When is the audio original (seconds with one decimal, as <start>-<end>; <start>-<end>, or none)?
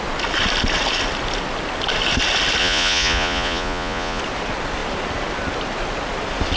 0.0-2.6; 4.2-6.6